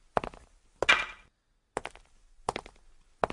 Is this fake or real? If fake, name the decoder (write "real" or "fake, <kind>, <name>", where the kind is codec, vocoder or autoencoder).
real